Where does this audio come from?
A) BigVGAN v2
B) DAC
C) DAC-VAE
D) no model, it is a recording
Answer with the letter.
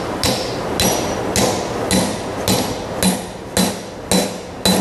D